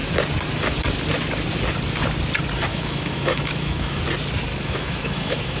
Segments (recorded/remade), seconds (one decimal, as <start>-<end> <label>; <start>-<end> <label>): 0.0-2.7 recorded; 2.7-4.0 remade; 4.0-4.5 recorded; 4.5-5.6 remade